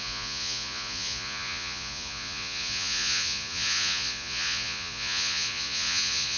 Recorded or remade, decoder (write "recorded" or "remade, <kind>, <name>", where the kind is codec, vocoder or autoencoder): remade, vocoder, Vocos